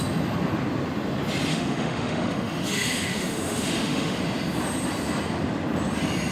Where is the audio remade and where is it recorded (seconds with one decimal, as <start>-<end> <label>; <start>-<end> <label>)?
0.0-1.5 recorded; 1.5-4.2 remade; 4.2-6.3 recorded

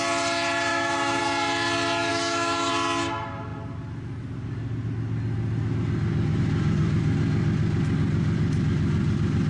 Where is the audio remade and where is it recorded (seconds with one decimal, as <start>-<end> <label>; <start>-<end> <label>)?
0.0-0.7 recorded; 0.7-1.2 remade; 1.2-2.1 recorded; 2.1-2.7 remade; 2.7-9.5 recorded

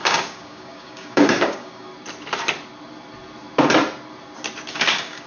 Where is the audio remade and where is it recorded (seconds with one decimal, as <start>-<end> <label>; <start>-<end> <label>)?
0.0-1.9 remade; 1.9-4.7 recorded; 4.7-5.3 remade

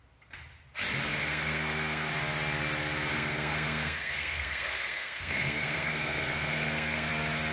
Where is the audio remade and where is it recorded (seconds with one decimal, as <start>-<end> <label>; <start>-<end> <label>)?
0.0-1.1 recorded; 1.1-2.1 remade; 2.1-3.1 recorded; 3.1-7.1 remade; 7.1-7.5 recorded